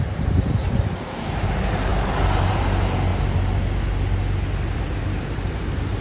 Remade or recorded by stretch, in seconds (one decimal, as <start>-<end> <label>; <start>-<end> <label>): 0.0-3.1 remade; 3.1-5.0 recorded; 5.0-6.0 remade